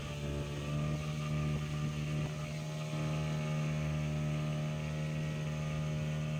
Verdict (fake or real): real